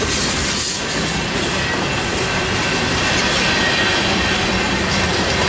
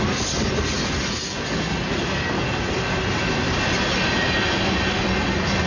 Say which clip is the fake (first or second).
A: first